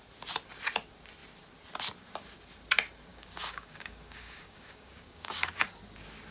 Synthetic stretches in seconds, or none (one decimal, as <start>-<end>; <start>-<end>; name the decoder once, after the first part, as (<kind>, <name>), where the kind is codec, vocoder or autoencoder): 3.1-5.5 (codec, DAC)